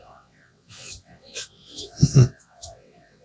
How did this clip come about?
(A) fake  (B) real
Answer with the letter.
A